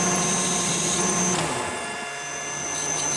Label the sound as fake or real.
real